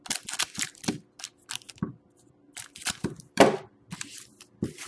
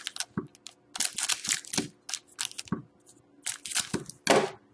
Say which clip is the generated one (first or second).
first